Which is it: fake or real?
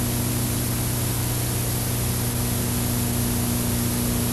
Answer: real